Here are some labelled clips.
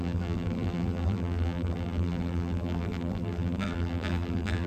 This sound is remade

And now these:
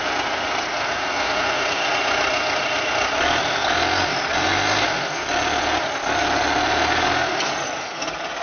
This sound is recorded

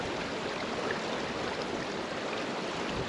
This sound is remade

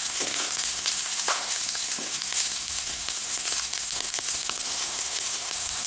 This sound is remade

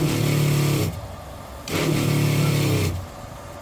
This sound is recorded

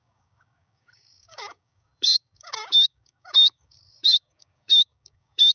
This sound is remade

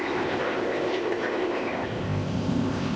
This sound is remade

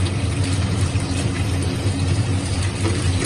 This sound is remade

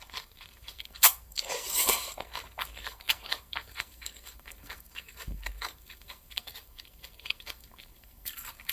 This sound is remade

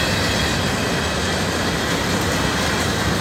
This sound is recorded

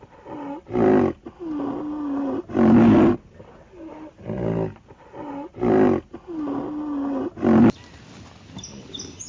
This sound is recorded